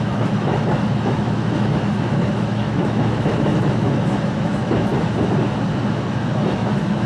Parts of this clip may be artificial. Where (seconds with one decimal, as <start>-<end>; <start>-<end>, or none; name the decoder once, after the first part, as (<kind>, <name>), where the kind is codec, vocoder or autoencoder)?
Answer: 0.0-4.9 (autoencoder, DAC-VAE); 5.7-7.1